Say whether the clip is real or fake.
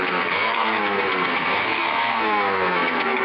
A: fake